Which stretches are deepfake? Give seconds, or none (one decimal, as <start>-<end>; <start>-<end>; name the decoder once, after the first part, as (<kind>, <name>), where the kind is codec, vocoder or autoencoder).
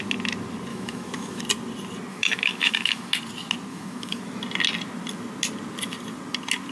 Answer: 0.7-1.4 (autoencoder, DAC-VAE); 2.1-3.1; 3.7-4.2